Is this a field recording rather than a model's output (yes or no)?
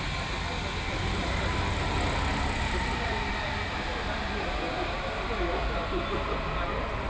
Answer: yes